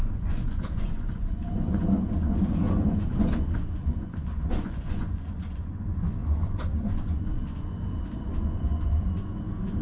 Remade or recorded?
remade